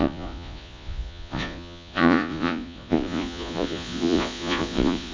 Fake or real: fake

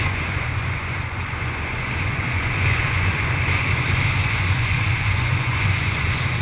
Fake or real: fake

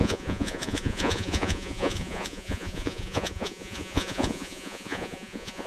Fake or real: fake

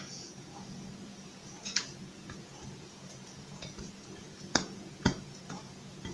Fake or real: fake